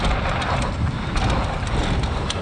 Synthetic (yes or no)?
no